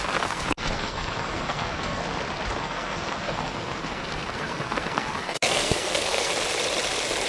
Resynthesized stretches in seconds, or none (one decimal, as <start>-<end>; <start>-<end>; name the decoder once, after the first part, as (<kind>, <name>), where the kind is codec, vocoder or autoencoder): 0.0-2.0 (codec, SNAC); 2.6-6.3